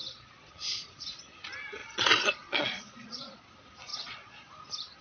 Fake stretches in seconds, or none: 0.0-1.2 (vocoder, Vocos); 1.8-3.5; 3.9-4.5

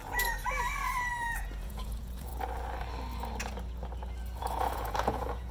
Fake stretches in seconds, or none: 1.2-2.3 (vocoder, Vocos); 4.4-5.5

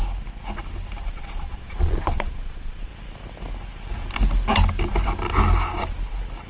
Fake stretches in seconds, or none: 1.0-2.9 (vocoder, Vocos)